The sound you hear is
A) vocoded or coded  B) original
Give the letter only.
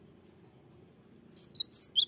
B